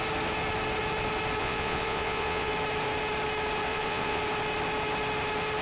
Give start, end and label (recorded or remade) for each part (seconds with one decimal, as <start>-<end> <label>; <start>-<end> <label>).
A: 0.0-1.4 recorded; 1.4-2.5 remade; 2.5-3.7 recorded; 3.7-4.2 remade; 4.2-5.6 recorded

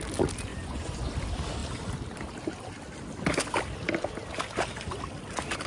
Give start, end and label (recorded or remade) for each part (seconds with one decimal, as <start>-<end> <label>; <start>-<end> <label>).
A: 0.0-0.5 recorded; 0.5-1.1 remade; 1.1-5.7 recorded

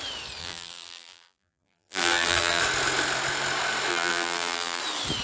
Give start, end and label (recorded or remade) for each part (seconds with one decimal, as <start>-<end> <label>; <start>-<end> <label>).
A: 0.0-0.4 recorded; 0.4-2.6 remade; 2.6-3.9 recorded; 3.9-4.8 remade; 4.8-5.2 recorded

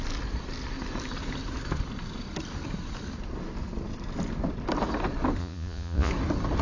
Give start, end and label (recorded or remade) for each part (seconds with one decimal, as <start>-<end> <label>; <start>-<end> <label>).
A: 0.0-5.4 recorded; 5.4-6.1 remade; 6.1-6.6 recorded

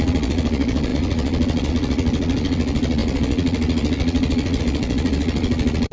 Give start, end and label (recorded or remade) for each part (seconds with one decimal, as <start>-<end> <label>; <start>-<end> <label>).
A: 0.0-5.9 remade